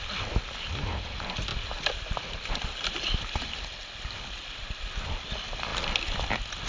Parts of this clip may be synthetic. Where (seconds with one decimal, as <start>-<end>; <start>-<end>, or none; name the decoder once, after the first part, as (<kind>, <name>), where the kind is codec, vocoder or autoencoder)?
none